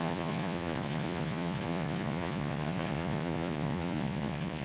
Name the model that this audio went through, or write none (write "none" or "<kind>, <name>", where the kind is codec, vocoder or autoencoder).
vocoder, Vocos